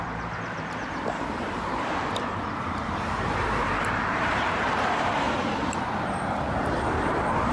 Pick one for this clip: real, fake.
fake